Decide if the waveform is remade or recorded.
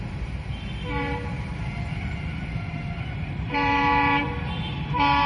remade